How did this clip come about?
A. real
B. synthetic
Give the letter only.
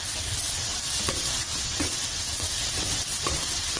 B